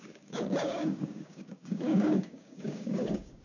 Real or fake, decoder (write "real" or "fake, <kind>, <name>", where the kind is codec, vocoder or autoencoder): fake, codec, DAC